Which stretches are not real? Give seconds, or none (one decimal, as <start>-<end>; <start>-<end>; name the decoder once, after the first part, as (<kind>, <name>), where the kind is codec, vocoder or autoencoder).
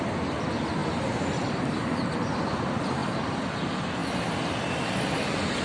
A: 0.0-0.8 (vocoder, BigVGAN v2); 1.5-3.0; 3.5-4.0